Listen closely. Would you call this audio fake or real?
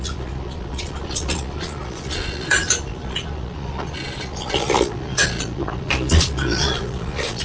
fake